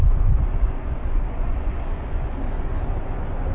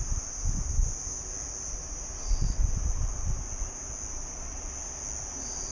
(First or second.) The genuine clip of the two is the second